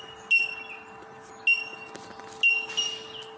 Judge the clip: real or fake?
real